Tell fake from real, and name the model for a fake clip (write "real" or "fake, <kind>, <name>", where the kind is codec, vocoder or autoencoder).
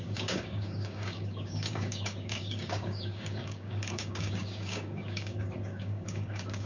fake, codec, DAC